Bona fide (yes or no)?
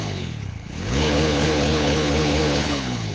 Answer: no